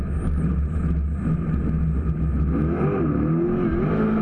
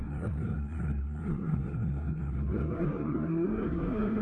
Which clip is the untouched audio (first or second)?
first